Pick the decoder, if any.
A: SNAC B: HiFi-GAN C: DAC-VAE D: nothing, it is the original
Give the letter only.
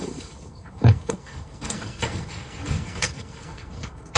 A